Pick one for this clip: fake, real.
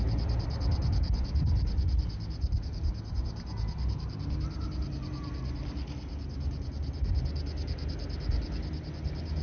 real